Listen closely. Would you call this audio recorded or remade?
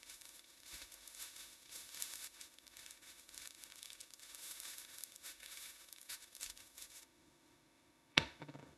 remade